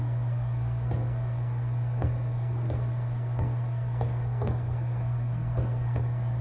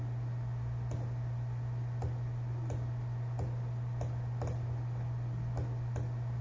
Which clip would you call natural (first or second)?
second